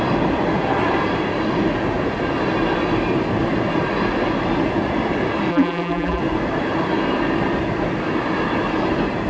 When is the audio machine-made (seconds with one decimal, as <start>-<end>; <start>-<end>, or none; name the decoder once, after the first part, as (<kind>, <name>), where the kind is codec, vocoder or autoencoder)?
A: 5.5-6.2 (vocoder, BigVGAN v2)